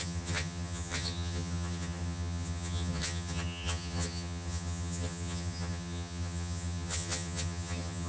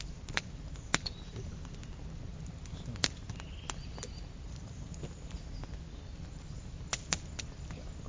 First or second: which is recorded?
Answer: second